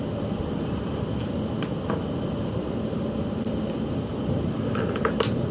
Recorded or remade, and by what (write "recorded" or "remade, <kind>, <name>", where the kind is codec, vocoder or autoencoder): recorded